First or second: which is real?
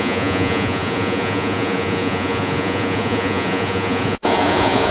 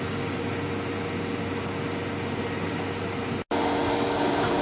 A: second